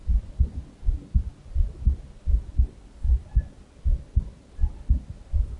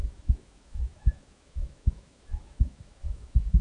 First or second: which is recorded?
first